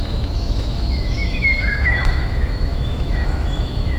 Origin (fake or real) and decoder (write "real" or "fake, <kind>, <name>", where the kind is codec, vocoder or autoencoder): fake, autoencoder, DAC-VAE